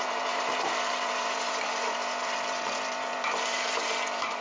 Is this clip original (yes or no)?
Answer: no